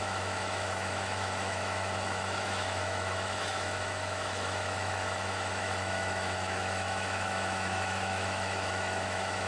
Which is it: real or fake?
fake